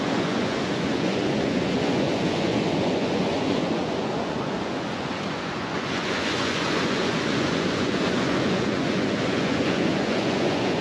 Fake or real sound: fake